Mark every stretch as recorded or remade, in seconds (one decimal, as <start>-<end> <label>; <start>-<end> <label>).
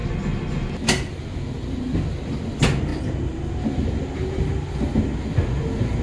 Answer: 0.0-6.0 recorded